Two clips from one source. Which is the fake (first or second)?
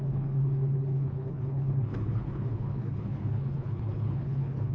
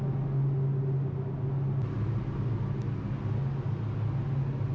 first